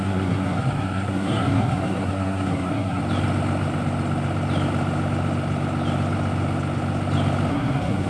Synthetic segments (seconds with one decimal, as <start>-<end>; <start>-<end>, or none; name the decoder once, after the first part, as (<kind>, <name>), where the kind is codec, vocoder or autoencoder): 0.0-3.0 (codec, SNAC); 7.5-8.1